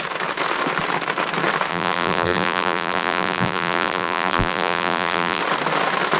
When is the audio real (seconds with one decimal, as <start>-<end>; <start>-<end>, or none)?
0.0-1.7; 5.4-6.2